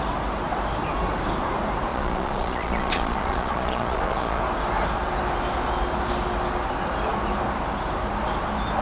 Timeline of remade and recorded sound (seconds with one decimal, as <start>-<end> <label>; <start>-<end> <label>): 0.0-1.9 recorded; 1.9-4.4 remade; 4.4-8.8 recorded